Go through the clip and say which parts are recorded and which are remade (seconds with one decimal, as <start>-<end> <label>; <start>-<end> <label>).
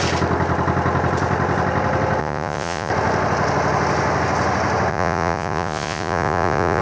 0.0-2.2 recorded; 2.2-2.9 remade; 2.9-4.9 recorded; 4.9-6.8 remade